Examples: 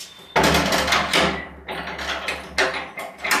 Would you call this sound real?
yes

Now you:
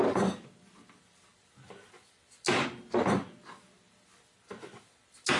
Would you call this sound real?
yes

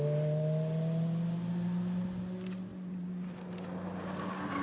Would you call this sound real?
yes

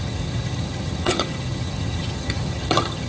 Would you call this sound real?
no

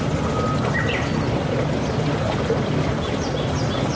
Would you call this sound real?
yes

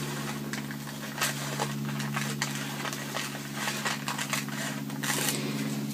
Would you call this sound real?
yes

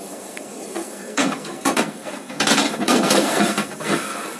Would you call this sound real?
no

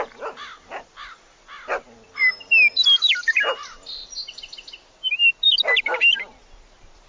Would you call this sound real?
yes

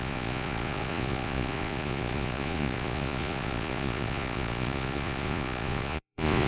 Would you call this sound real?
no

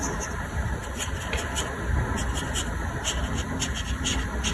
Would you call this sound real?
no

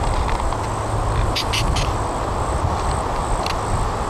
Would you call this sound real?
yes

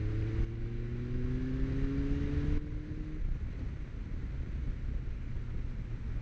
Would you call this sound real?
yes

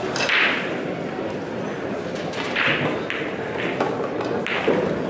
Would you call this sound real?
yes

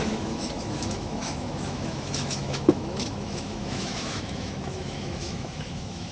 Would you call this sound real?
no